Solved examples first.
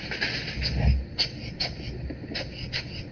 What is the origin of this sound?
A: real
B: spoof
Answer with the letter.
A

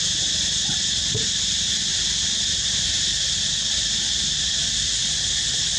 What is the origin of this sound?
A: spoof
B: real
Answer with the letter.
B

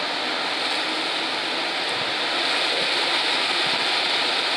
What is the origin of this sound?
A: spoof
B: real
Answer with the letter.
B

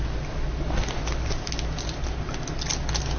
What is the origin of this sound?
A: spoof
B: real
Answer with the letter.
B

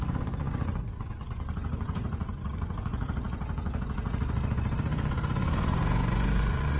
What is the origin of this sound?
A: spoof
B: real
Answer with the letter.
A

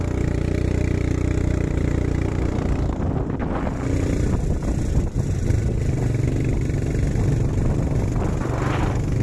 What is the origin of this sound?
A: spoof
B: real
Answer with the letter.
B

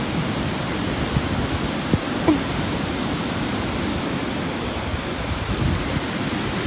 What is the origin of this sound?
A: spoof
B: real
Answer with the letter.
B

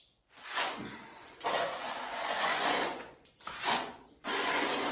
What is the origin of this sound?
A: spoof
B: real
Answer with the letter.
A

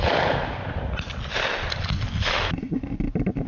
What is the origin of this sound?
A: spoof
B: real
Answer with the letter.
B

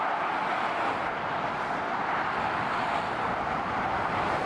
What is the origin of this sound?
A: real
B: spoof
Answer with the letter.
A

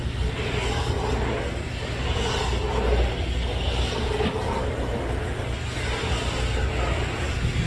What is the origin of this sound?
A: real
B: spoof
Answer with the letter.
A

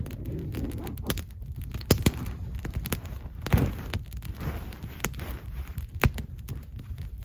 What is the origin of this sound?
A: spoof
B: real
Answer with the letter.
B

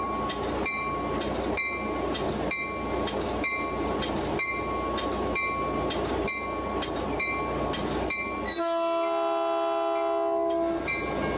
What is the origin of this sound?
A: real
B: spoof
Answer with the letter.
A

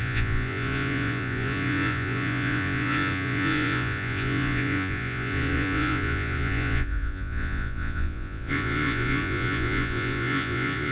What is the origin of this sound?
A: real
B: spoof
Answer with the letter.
B